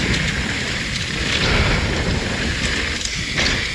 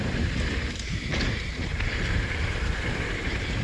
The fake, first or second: second